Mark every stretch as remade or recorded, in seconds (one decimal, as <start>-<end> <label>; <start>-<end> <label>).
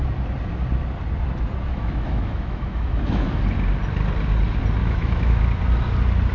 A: 0.0-1.7 recorded; 1.7-3.4 remade; 3.4-4.8 recorded; 4.8-5.4 remade; 5.4-6.3 recorded